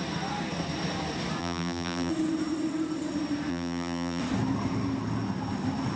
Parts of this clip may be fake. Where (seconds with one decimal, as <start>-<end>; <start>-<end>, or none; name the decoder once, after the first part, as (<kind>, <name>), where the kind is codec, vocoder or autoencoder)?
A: 1.4-2.1 (vocoder, BigVGAN v2); 3.5-4.2